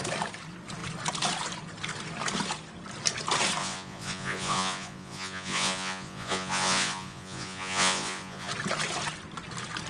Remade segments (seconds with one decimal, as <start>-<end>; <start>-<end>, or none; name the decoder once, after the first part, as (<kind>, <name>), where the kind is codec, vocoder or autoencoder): 3.6-8.5 (vocoder, Vocos)